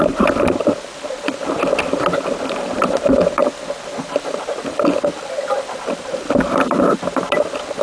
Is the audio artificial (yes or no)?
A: no